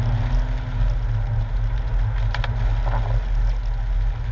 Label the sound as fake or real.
real